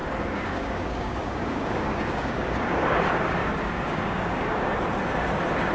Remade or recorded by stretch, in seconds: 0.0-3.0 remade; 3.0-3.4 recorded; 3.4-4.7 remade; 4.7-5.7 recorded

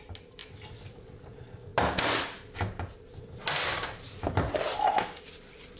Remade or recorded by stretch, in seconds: 0.0-0.4 recorded; 0.4-1.0 remade; 1.0-5.8 recorded

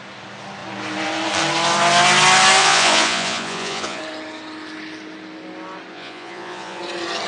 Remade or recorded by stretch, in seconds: 0.0-2.6 recorded; 2.6-4.0 remade; 4.0-5.9 recorded; 5.9-6.8 remade; 6.8-7.3 recorded

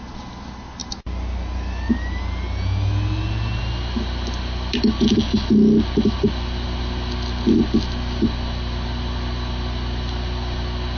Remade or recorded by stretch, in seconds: 0.0-11.0 recorded

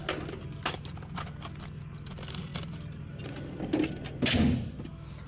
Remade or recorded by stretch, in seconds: 0.0-5.3 recorded

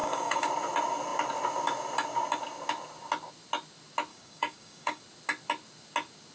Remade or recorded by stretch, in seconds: 0.0-0.5 remade; 0.5-4.1 recorded; 4.1-5.0 remade; 5.0-6.3 recorded

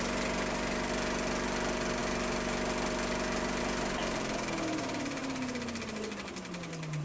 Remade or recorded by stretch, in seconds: 0.0-7.0 recorded